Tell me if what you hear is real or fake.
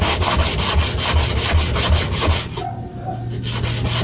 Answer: real